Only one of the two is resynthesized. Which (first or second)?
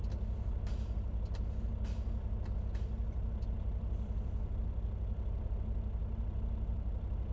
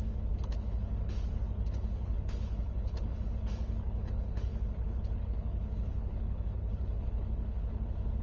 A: second